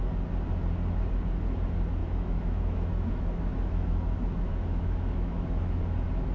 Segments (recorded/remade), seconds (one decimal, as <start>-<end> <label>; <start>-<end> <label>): 0.0-2.0 recorded; 2.0-5.8 remade; 5.8-6.3 recorded